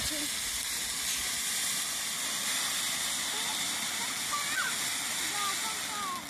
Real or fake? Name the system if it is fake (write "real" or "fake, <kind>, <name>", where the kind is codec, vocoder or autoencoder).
real